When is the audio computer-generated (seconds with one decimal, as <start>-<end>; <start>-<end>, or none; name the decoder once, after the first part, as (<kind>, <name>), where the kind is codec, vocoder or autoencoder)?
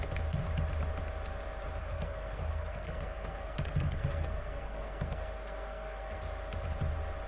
1.8-6.2 (codec, SNAC)